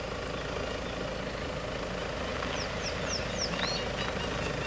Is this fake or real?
real